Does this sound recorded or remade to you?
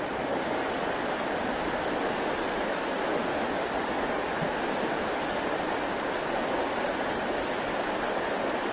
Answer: recorded